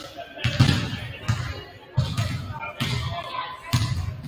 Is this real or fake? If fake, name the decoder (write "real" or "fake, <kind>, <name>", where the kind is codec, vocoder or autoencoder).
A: real